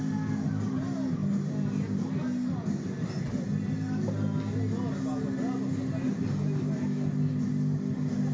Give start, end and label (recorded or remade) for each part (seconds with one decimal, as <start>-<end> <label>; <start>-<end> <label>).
0.0-8.3 recorded